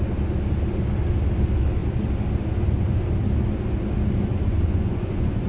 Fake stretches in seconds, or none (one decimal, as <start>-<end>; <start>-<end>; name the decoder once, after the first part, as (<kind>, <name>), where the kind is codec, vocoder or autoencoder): 4.3-5.5 (vocoder, Vocos)